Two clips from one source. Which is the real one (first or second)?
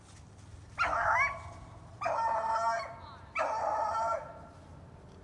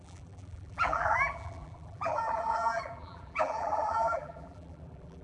first